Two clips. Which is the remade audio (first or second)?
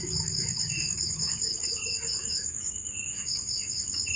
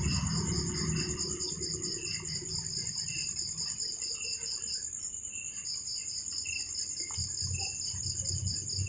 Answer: first